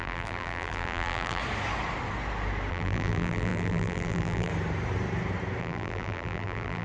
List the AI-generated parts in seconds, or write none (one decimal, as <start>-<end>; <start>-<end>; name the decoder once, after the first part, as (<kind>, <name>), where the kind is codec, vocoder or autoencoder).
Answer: 0.0-1.4 (vocoder, BigVGAN v2); 2.7-4.5; 5.6-6.8